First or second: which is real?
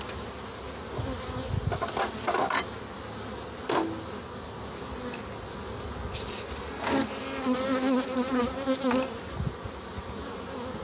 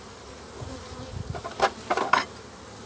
first